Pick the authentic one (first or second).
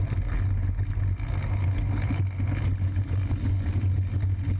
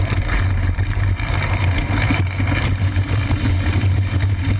first